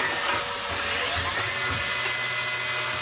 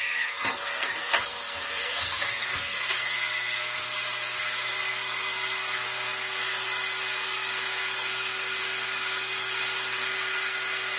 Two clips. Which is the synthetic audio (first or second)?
second